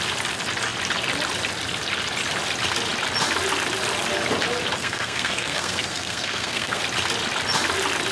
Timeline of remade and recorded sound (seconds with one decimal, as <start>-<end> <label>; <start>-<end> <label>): 0.0-4.8 recorded; 4.8-6.8 remade; 6.8-8.1 recorded

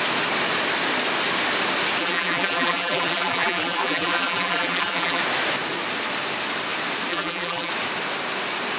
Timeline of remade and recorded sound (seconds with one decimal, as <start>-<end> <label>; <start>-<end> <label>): 0.0-2.0 recorded; 2.0-5.2 remade; 5.2-7.1 recorded; 7.1-7.7 remade; 7.7-8.8 recorded

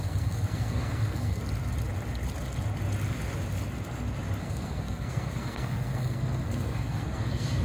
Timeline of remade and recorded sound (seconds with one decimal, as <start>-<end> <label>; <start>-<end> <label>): 0.0-1.4 remade; 1.4-4.4 recorded; 4.4-7.6 remade